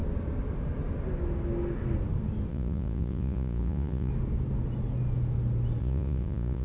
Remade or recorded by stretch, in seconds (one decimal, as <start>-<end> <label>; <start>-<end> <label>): 0.0-2.5 recorded; 2.5-4.1 remade; 4.1-5.8 recorded; 5.8-6.6 remade